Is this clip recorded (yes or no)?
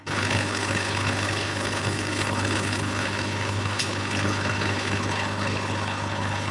no